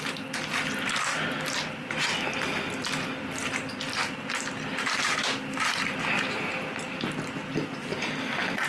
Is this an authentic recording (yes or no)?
yes